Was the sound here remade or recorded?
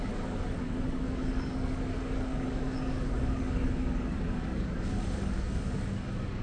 remade